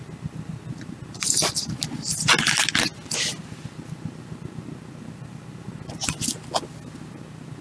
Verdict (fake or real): real